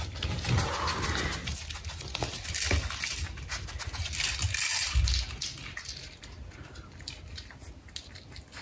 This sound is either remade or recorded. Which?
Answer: recorded